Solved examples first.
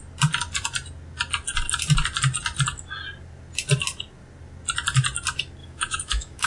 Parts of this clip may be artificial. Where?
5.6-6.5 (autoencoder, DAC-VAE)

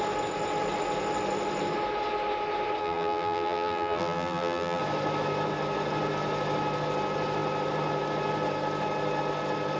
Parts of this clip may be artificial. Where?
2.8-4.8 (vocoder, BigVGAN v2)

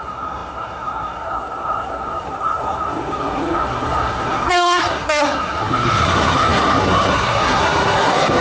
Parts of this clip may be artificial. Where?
0.0-8.4 (codec, SNAC)

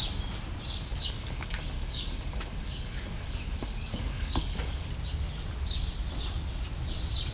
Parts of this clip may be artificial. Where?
0.9-4.9 (codec, DAC)